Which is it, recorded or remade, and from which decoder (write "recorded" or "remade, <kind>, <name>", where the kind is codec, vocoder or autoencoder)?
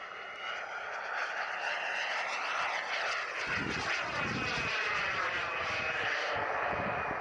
recorded